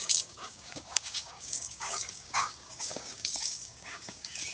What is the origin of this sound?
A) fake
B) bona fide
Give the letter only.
A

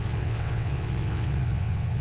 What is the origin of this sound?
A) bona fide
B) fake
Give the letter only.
B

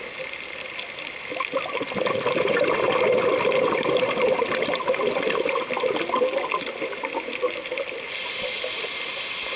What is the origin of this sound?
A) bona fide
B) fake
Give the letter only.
A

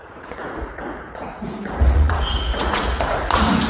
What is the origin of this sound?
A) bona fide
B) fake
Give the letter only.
B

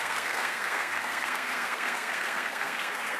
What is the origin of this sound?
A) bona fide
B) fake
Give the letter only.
B